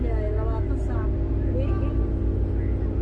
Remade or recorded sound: recorded